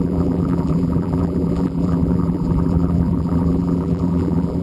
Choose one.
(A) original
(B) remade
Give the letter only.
B